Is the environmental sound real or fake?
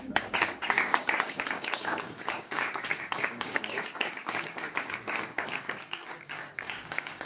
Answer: fake